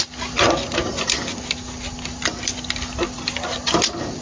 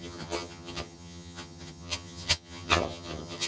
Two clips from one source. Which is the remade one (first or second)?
second